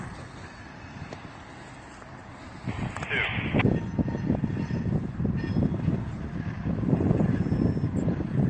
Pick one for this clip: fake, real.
real